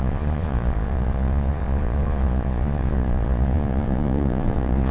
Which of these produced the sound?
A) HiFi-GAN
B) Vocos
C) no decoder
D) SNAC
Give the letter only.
B